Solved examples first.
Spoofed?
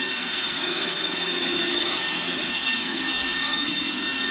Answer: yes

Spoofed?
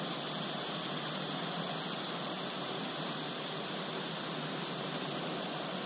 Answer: no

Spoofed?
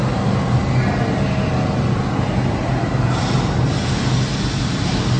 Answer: no